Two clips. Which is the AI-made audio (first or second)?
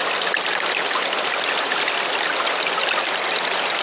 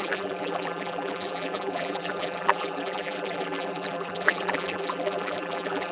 second